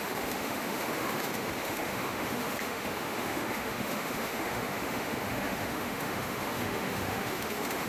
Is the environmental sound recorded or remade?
remade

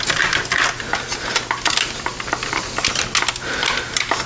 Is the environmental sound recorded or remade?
recorded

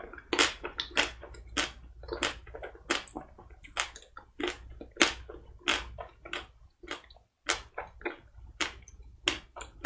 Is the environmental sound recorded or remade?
recorded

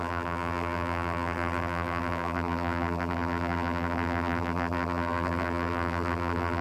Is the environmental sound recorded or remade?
remade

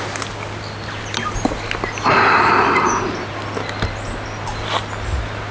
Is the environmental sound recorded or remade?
recorded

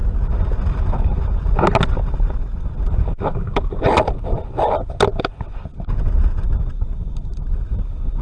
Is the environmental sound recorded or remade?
recorded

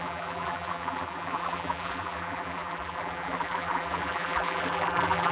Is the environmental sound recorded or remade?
remade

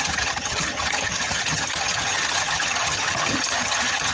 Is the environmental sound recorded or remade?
remade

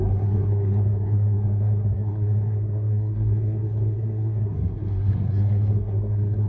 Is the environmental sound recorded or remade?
remade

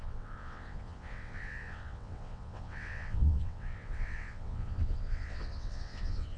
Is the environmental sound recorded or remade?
remade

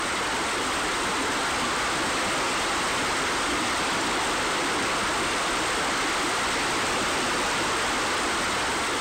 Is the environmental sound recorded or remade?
recorded